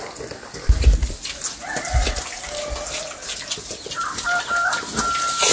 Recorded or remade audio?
recorded